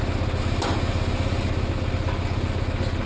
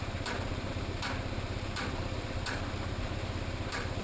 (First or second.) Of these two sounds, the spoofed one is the second